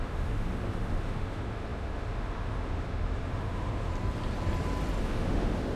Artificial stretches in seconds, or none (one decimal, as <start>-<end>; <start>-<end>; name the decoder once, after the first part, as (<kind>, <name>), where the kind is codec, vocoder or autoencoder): 0.0-3.9 (autoencoder, DAC-VAE); 5.0-5.8